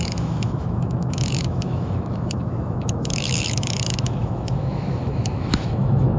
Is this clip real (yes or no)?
no